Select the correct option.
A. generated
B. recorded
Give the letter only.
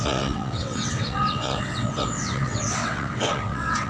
A